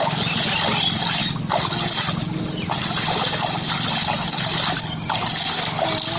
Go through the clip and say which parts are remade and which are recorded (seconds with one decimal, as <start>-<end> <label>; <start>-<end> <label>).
0.0-6.2 recorded